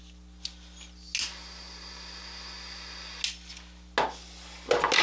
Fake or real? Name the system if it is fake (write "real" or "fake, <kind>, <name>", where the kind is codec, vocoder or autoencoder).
real